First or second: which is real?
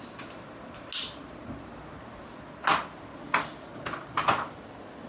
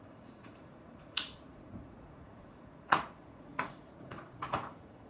first